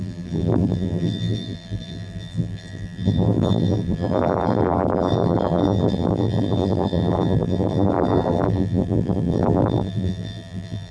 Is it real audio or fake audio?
fake